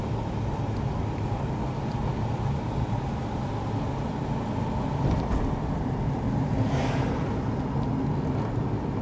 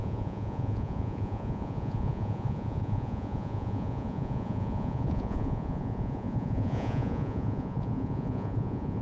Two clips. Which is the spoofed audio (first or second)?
second